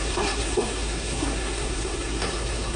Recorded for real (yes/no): no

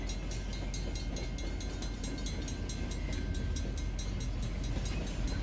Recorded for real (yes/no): yes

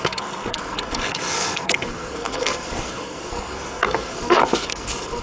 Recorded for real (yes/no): no